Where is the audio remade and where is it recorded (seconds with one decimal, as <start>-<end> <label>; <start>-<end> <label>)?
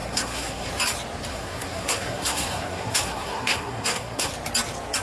0.0-0.7 remade; 0.7-1.3 recorded; 1.3-4.3 remade; 4.3-5.0 recorded